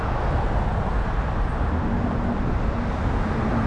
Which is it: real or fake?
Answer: real